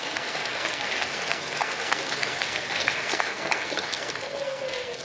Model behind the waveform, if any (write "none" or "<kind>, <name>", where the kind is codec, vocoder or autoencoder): codec, SNAC